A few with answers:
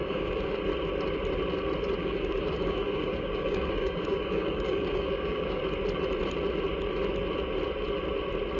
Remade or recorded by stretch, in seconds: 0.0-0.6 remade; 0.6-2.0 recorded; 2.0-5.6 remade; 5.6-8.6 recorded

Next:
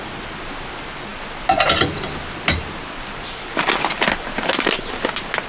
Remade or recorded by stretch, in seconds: 0.0-5.5 recorded

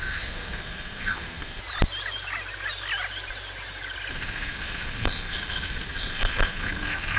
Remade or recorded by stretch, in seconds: 0.0-1.6 remade; 1.6-4.1 recorded; 4.1-7.2 remade

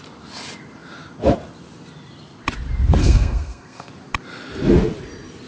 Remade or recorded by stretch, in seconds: 0.0-3.0 recorded; 3.0-3.9 remade; 3.9-5.5 recorded

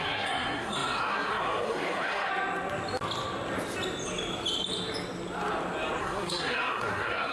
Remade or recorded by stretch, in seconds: 0.0-2.3 remade; 2.3-6.0 recorded; 6.0-7.3 remade

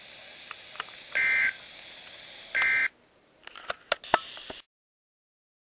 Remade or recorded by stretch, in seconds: 0.0-5.8 recorded

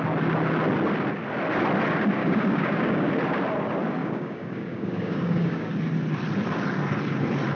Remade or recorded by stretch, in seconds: 0.0-2.2 recorded; 2.2-3.1 remade; 3.1-4.0 recorded; 4.0-5.7 remade; 5.7-7.5 recorded